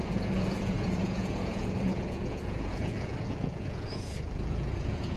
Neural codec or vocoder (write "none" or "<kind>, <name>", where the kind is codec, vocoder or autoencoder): vocoder, Vocos